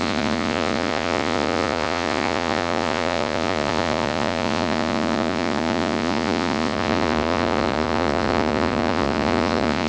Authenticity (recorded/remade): remade